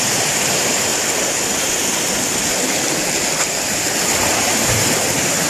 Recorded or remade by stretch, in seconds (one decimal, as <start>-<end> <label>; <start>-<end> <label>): 0.0-0.9 remade; 0.9-4.2 recorded; 4.2-5.5 remade